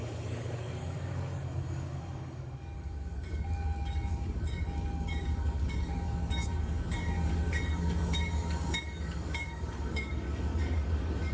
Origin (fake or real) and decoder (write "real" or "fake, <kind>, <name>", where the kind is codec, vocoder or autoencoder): fake, codec, DAC